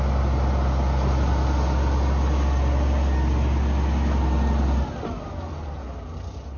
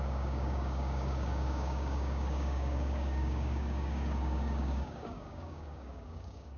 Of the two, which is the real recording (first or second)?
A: first